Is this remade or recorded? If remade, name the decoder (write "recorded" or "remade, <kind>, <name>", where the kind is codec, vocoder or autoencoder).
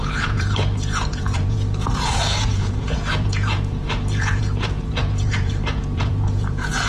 remade, vocoder, Vocos